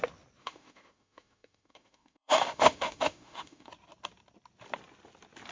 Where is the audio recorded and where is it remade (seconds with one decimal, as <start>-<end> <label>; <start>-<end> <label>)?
0.0-0.4 recorded; 0.4-3.7 remade; 3.7-5.5 recorded